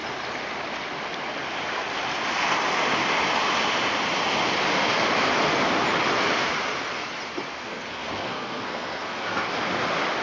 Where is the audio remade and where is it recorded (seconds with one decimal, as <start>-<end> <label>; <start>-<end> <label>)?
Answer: 0.0-7.6 recorded; 7.6-9.5 remade; 9.5-10.2 recorded